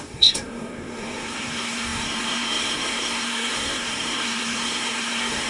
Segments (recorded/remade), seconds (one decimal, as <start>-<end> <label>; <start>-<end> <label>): 0.0-5.5 remade